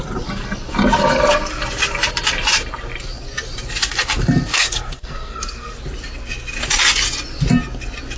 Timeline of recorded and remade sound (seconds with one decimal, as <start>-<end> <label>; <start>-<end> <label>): 0.0-4.5 recorded; 4.5-5.8 remade; 5.8-8.2 recorded